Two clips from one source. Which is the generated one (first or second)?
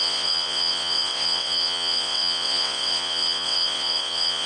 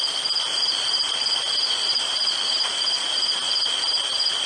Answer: first